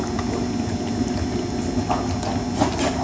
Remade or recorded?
recorded